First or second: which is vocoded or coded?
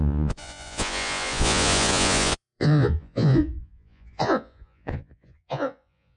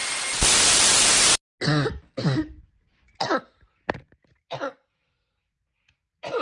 first